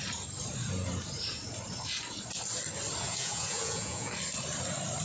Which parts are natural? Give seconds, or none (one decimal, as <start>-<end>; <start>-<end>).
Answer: 0.0-3.0; 4.1-5.0